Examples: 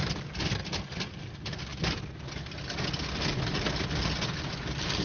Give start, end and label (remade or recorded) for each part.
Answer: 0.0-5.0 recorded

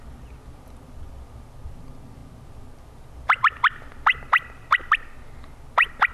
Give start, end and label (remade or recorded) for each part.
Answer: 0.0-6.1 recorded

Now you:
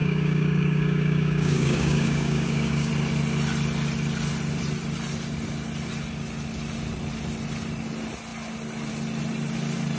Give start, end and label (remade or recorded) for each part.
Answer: 0.0-2.9 remade; 2.9-10.0 recorded